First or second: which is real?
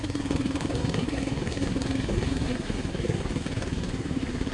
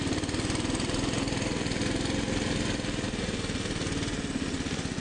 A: second